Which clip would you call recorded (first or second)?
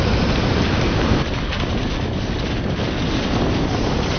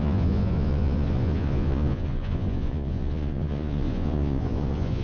first